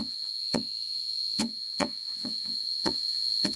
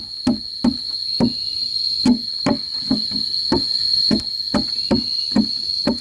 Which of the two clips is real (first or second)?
second